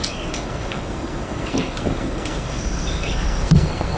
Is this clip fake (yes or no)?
yes